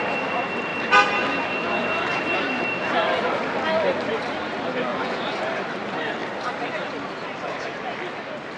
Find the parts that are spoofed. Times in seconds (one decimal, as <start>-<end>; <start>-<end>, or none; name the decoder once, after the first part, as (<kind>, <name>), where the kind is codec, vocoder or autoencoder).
4.9-5.6 (vocoder, Vocos)